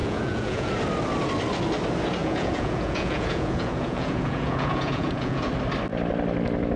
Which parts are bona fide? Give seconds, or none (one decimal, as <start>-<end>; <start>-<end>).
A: 0.7-2.2; 5.5-6.8